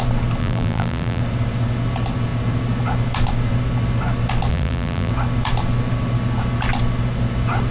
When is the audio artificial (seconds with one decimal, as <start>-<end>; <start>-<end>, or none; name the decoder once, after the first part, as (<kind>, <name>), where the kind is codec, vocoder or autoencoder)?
0.4-1.2 (vocoder, BigVGAN v2); 4.5-5.1